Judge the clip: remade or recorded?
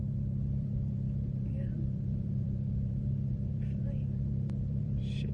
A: remade